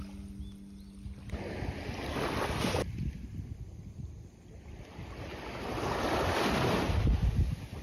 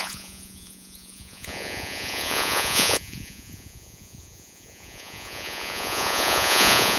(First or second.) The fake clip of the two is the second